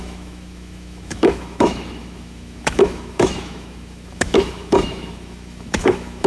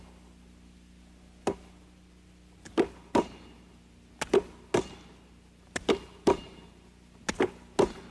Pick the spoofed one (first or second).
first